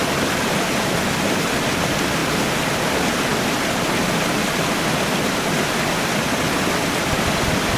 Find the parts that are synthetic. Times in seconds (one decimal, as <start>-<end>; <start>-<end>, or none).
none